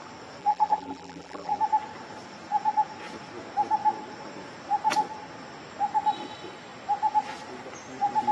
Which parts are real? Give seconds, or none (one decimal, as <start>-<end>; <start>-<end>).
0.0-0.4; 1.6-8.3